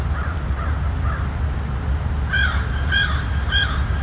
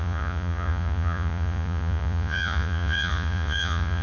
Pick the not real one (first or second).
second